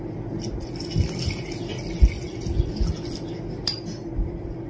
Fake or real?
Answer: real